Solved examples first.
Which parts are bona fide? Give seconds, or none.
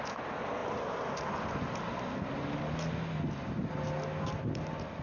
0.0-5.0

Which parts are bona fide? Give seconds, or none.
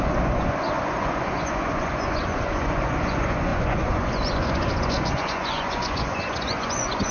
none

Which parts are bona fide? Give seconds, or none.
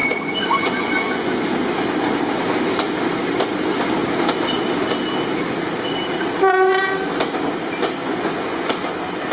1.4-8.0; 8.7-9.3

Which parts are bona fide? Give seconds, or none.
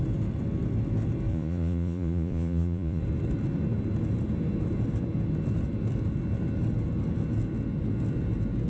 0.0-1.3; 3.0-8.7